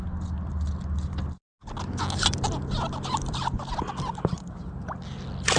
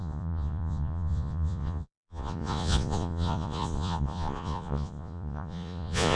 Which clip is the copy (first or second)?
second